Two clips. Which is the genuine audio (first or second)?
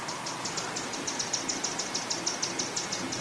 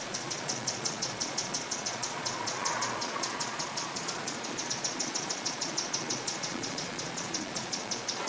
first